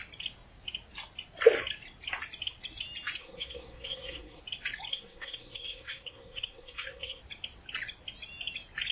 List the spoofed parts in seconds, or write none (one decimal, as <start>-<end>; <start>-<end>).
3.2-4.4; 4.9-7.2